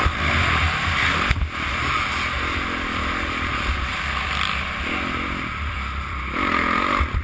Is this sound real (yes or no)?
no